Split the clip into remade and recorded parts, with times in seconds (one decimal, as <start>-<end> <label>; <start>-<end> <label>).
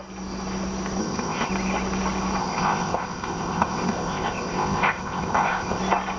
0.0-1.0 recorded; 1.0-1.5 remade; 1.5-2.4 recorded; 2.4-5.8 remade; 5.8-6.2 recorded